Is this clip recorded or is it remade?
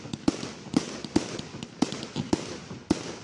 recorded